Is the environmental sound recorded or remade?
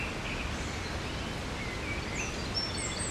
recorded